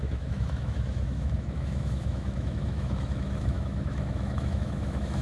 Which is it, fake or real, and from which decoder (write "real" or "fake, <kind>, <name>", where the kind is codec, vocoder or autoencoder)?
fake, autoencoder, DAC-VAE